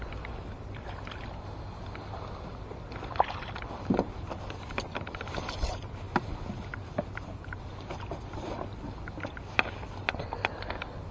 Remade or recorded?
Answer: recorded